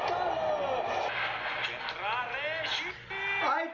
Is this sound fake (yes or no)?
no